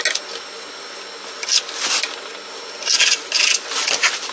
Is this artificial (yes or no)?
no